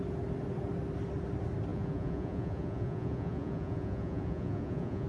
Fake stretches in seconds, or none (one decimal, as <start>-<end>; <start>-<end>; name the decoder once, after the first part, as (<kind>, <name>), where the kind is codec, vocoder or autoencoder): 1.7-5.1 (vocoder, Vocos)